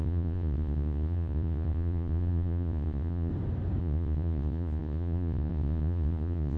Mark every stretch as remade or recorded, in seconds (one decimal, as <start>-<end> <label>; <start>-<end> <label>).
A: 0.0-3.3 remade; 3.3-3.8 recorded; 3.8-6.6 remade